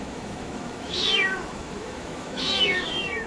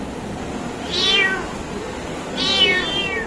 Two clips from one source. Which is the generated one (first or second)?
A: first